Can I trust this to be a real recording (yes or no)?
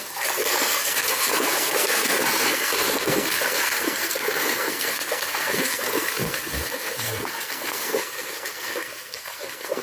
no